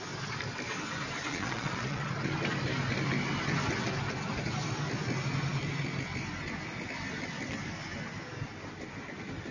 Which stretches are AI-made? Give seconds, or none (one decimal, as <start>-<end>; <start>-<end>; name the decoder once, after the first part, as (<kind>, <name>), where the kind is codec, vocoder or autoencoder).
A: 1.3-2.1 (vocoder, Vocos)